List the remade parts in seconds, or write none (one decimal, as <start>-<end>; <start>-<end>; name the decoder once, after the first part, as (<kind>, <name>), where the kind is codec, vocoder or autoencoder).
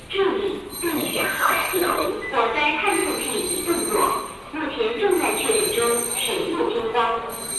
0.9-2.1 (codec, SNAC)